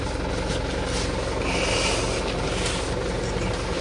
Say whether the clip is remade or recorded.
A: recorded